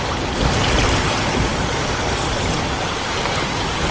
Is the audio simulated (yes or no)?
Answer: no